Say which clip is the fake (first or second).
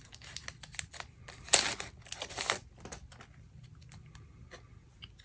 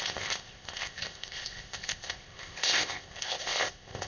second